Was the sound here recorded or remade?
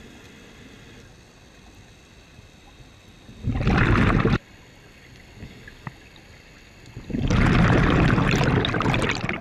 recorded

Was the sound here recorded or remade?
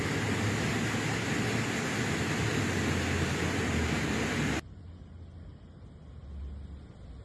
recorded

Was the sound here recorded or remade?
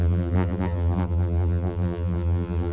remade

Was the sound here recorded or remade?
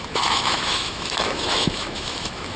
remade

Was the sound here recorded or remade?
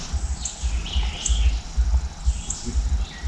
recorded